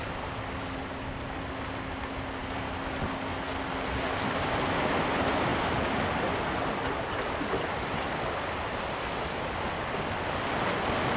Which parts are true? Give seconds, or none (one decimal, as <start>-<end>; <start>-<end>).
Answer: 0.0-11.2